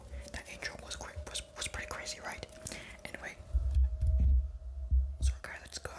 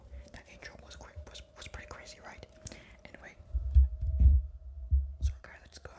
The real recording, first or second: first